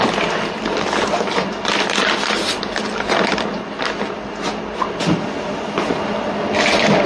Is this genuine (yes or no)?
yes